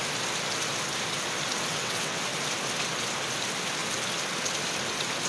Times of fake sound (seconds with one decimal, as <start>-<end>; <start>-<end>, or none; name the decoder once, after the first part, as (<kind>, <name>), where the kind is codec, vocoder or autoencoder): 1.7-2.2 (vocoder, WaveNeXt)